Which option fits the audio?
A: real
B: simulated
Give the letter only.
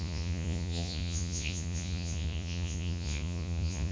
B